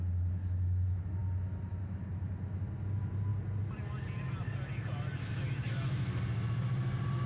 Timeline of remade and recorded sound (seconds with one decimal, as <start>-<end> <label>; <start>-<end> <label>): 0.0-7.3 recorded